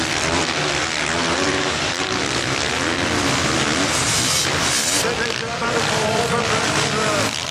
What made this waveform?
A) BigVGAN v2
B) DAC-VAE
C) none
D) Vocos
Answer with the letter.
C